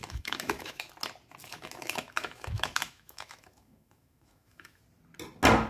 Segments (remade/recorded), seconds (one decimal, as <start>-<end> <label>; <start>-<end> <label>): 0.0-0.9 remade; 0.9-1.4 recorded; 1.4-4.8 remade; 4.8-5.7 recorded